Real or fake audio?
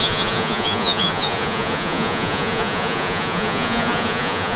fake